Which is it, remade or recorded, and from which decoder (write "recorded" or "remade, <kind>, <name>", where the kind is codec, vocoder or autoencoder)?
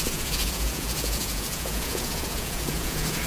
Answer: remade, vocoder, Vocos